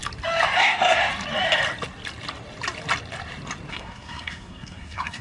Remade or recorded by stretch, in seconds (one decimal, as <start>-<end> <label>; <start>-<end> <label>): 0.0-0.6 recorded; 0.6-1.0 remade; 1.0-3.7 recorded; 3.7-5.2 remade